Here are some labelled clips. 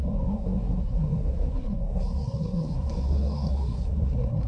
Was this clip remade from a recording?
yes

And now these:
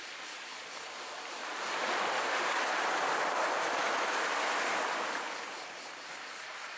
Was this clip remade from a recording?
no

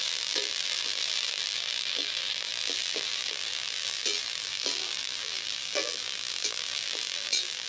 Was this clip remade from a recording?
yes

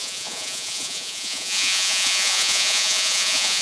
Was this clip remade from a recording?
yes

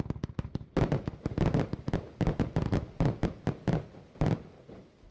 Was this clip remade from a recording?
no